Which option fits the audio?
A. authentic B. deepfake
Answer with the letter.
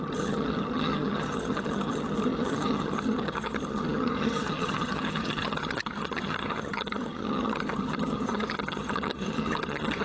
B